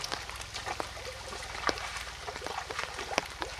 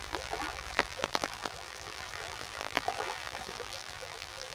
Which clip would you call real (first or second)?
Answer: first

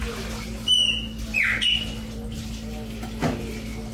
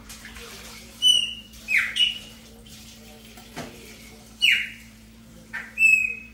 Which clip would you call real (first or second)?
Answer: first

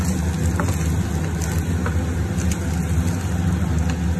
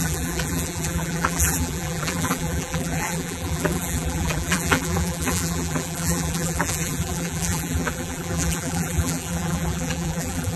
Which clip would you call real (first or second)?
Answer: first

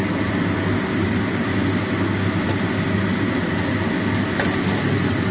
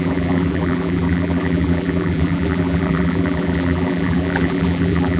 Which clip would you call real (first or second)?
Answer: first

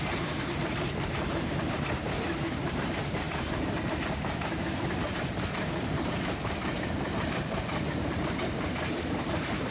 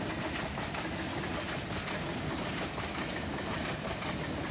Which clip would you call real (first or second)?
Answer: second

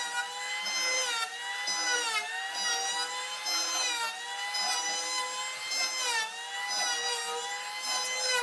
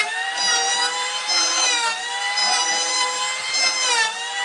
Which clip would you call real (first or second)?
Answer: first